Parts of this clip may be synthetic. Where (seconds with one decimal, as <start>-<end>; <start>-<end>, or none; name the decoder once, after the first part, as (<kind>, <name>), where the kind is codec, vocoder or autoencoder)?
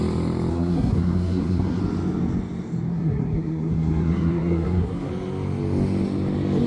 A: 0.5-1.8 (codec, SNAC); 2.9-5.1